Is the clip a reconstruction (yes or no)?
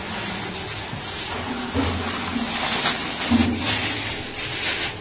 no